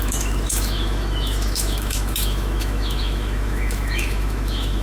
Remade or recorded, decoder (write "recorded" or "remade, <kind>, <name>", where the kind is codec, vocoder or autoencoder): remade, autoencoder, DAC-VAE